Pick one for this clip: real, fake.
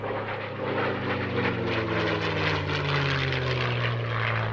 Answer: real